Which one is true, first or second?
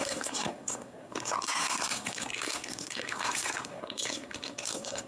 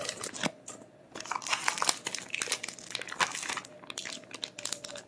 second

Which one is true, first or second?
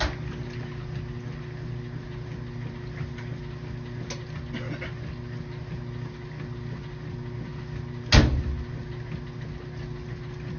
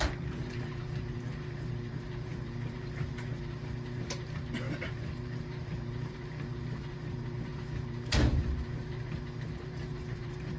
first